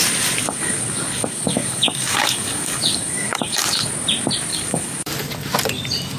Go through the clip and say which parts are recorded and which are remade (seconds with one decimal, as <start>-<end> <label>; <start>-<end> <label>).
0.0-0.4 recorded; 0.4-3.9 remade; 3.9-4.5 recorded; 4.5-5.1 remade; 5.1-6.2 recorded